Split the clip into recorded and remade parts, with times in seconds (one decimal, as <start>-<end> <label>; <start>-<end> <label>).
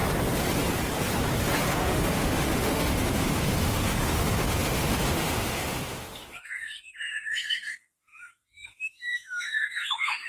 0.0-1.7 recorded; 1.7-10.3 remade